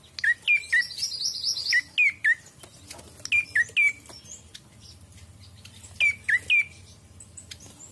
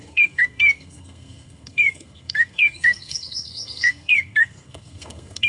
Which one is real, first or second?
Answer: first